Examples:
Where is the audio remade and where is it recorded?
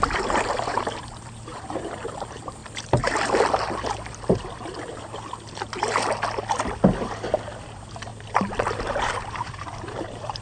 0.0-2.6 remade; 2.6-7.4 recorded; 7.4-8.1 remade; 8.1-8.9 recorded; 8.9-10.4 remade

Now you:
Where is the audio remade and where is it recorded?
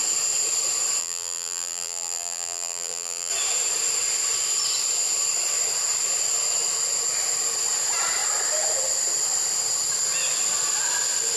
0.0-1.0 recorded; 1.0-3.3 remade; 3.3-11.4 recorded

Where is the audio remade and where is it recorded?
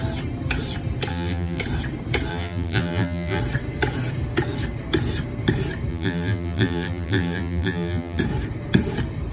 0.0-1.1 recorded; 1.1-1.6 remade; 1.6-2.3 recorded; 2.3-3.4 remade; 3.4-5.9 recorded; 5.9-8.2 remade; 8.2-9.3 recorded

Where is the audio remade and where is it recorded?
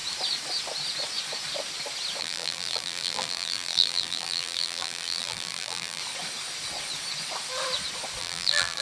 0.0-2.2 recorded; 2.2-6.0 remade; 6.0-8.2 recorded; 8.2-8.8 remade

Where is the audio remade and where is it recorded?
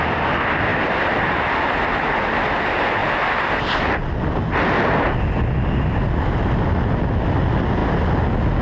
0.0-0.7 recorded; 0.7-2.6 remade; 2.6-8.6 recorded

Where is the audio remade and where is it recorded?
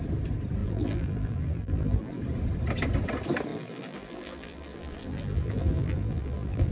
0.0-0.6 recorded; 0.6-2.2 remade; 2.2-3.5 recorded; 3.5-6.7 remade